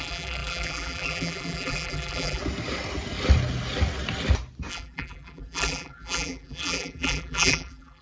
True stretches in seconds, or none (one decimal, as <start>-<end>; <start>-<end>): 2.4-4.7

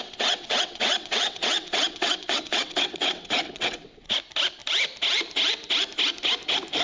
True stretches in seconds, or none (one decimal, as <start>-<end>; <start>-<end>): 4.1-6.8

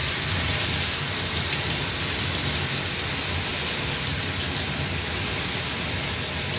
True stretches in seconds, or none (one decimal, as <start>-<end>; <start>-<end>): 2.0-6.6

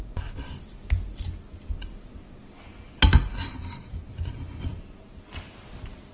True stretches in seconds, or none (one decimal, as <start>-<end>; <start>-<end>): 0.0-3.5; 4.1-6.1

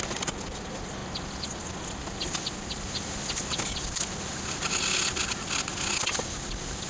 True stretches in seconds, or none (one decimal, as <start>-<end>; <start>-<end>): 0.0-6.9

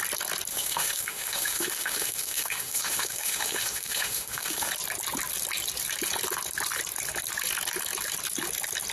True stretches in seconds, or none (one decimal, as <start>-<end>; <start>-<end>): 0.0-0.5; 4.7-8.9

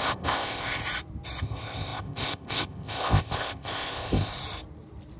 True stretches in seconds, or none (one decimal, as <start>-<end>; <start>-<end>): 0.8-1.4; 4.3-5.2